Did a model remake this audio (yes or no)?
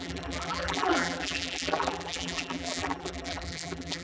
yes